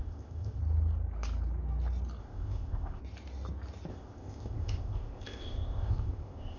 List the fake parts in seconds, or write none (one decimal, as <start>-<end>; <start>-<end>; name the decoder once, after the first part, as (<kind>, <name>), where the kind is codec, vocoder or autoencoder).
0.0-0.6 (codec, ZipCodec); 2.2-3.0; 3.9-6.6